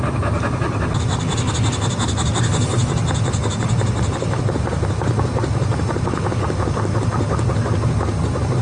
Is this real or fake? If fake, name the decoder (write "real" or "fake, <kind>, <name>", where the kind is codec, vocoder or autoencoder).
real